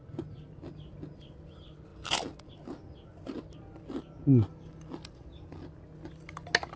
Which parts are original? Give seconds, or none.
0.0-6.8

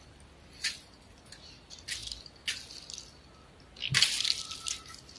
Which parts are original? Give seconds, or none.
0.0-5.2